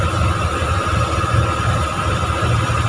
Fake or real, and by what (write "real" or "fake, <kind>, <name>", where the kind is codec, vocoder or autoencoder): real